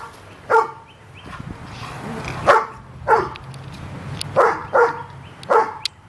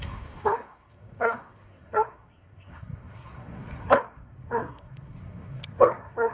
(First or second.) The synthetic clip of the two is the second